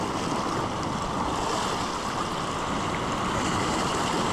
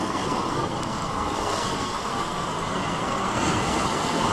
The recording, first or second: first